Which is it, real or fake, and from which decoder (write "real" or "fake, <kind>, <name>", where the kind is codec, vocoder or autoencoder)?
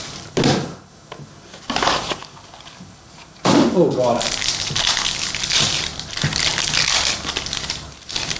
real